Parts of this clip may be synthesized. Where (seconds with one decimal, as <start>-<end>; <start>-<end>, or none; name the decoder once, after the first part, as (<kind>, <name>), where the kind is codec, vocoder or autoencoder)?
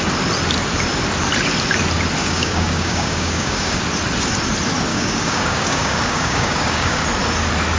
2.2-3.8 (codec, DAC); 4.9-7.0